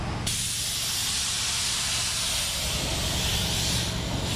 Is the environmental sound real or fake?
real